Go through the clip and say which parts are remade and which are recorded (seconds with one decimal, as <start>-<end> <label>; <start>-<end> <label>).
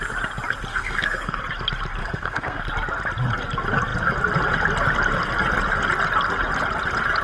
0.0-0.7 recorded; 0.7-1.4 remade; 1.4-2.0 recorded; 2.0-2.6 remade; 2.6-7.2 recorded